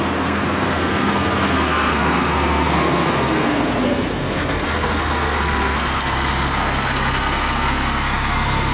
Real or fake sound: fake